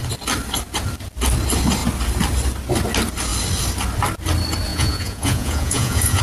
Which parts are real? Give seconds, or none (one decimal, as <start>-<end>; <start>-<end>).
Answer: 0.0-4.7